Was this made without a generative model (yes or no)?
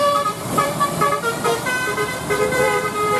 no